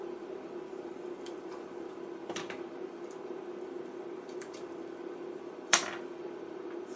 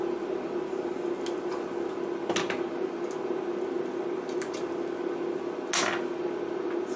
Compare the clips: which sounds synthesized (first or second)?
first